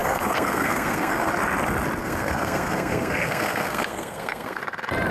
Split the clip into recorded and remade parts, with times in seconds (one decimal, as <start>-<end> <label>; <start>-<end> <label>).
0.0-1.3 remade; 1.3-2.0 recorded; 2.0-4.6 remade; 4.6-5.1 recorded